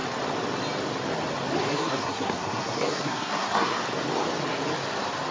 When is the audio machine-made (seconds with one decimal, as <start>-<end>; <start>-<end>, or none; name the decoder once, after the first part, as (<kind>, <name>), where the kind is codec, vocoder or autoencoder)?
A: 1.7-3.8 (codec, SNAC)

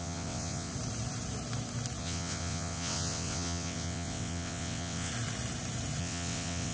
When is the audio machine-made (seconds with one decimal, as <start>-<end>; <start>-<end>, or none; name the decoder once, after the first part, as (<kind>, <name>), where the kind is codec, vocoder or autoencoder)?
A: 0.0-0.7 (vocoder, WaveNeXt); 2.0-5.1; 6.0-6.7

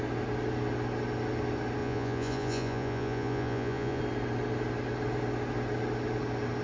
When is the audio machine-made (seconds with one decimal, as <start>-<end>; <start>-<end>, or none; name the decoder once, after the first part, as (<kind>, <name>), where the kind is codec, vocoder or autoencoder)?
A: 1.8-4.0 (vocoder, Vocos)

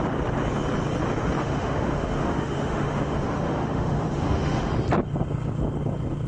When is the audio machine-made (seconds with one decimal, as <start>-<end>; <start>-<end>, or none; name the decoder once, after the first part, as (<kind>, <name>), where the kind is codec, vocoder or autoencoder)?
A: 1.4-4.7 (autoencoder, DAC-VAE)

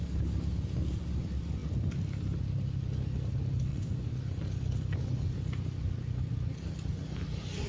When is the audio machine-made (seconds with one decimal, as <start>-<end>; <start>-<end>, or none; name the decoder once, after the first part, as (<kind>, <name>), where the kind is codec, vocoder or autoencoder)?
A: 3.7-4.2 (vocoder, Vocos)

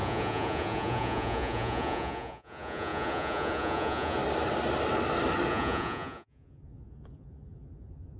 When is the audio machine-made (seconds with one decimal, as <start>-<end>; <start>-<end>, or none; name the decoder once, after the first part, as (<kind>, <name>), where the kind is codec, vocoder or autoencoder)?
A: 0.0-4.2 (vocoder, Vocos); 5.5-8.2